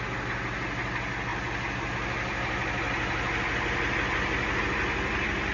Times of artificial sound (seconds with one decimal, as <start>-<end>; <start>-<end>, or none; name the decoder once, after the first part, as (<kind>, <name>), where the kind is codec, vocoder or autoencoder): none